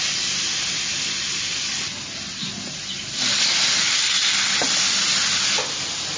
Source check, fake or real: real